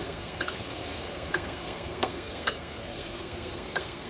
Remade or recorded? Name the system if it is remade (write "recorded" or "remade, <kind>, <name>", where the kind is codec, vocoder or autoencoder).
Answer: remade, codec, SNAC